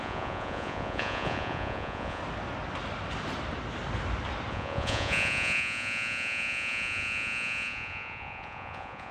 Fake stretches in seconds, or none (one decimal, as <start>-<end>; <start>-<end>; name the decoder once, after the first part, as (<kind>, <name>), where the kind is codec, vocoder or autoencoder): 0.0-2.2 (vocoder, Vocos); 4.5-9.1